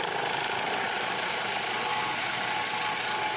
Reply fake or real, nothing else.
real